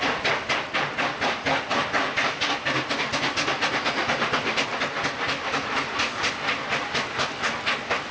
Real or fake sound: real